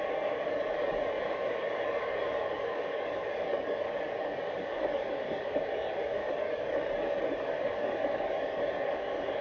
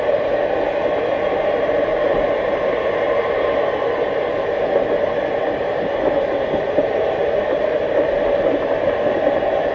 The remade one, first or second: first